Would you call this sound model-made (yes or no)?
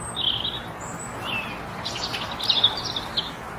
no